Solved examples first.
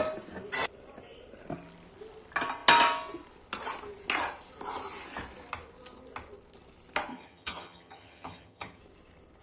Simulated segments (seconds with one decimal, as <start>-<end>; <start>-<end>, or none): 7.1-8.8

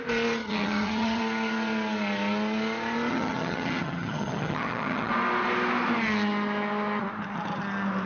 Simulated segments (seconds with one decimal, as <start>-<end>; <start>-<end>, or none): 0.4-1.2; 3.1-5.1

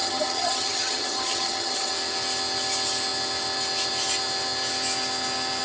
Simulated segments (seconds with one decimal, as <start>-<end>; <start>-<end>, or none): 0.0-1.9

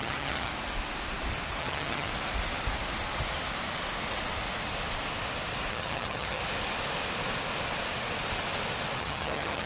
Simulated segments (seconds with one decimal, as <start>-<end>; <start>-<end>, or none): 0.0-0.5; 1.6-2.1; 5.7-6.4; 9.0-9.7

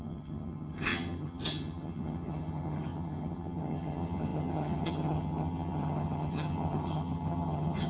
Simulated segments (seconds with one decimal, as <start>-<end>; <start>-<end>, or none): 0.0-7.9